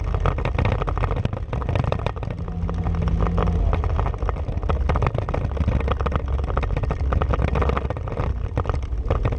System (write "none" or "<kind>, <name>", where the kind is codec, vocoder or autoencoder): none